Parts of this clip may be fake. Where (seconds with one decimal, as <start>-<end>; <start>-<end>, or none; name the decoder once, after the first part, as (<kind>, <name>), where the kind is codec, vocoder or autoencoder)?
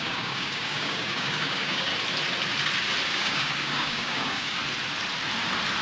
0.0-1.9 (codec, DAC); 3.2-4.6